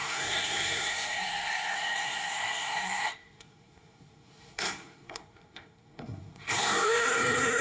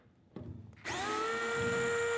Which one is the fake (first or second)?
first